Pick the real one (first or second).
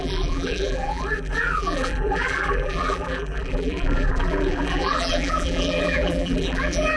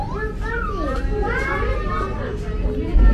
second